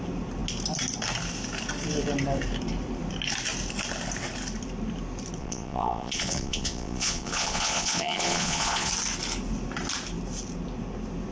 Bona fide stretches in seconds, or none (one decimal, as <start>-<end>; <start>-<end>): 0.0-5.4; 8.9-11.3